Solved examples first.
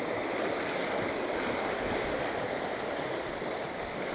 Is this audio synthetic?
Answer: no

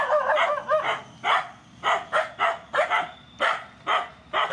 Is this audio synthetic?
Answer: no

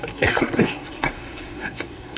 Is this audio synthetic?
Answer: yes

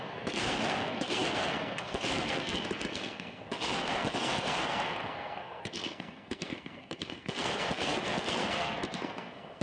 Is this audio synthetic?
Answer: yes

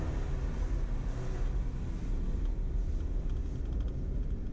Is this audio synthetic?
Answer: no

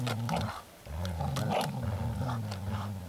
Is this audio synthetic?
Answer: no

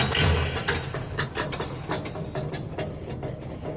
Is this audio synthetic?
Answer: yes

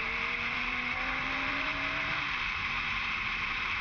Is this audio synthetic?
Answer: yes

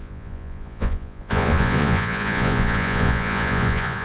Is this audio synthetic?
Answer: yes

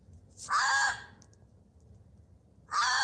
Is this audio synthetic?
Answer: no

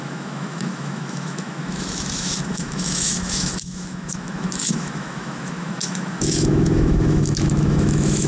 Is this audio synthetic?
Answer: yes